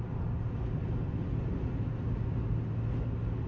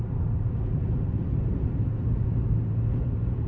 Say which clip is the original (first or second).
first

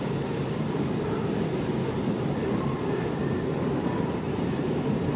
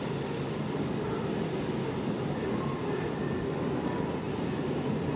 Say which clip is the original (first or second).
second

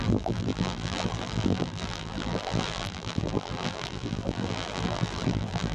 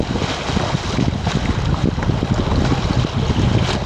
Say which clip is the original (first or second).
second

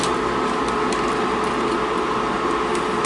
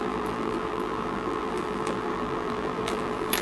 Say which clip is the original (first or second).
first